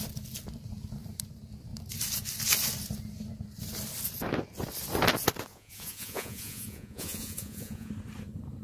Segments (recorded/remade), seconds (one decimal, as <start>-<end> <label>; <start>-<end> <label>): 0.0-5.5 recorded; 5.5-7.9 remade; 7.9-8.6 recorded